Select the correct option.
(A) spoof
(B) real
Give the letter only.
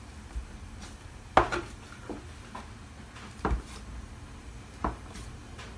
B